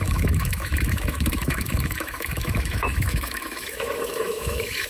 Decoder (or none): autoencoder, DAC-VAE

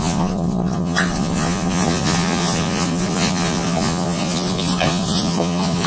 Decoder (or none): vocoder, Vocos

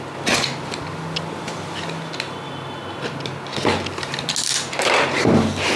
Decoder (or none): none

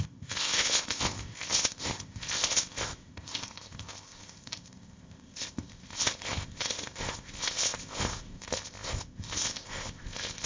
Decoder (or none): codec, ZipCodec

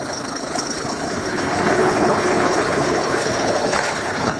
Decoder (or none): codec, HILCodec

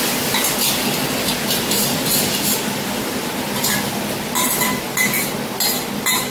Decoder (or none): none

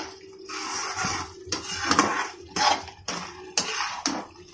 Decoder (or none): none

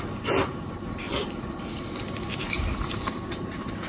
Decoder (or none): vocoder, BigVGAN v2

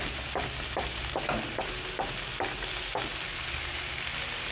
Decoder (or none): none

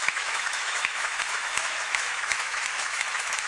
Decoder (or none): autoencoder, DAC-VAE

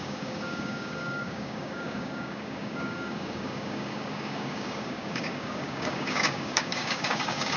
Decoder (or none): codec, DAC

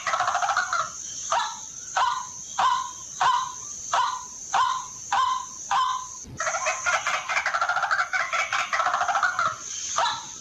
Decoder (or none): none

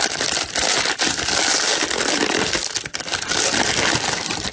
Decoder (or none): none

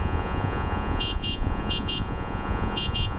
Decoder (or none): vocoder, Vocos